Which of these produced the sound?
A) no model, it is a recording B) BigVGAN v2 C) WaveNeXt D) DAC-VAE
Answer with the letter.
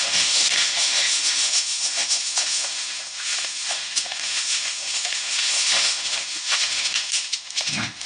D